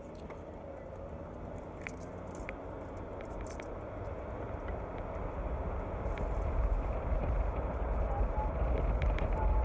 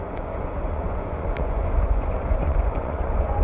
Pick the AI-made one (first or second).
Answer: second